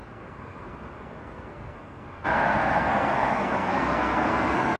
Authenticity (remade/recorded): remade